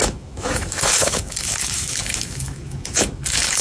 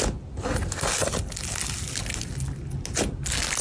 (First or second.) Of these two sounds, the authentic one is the second